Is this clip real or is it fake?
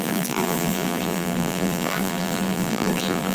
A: fake